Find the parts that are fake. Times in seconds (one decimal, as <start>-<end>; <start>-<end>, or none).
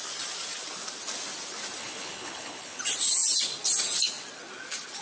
1.8-2.8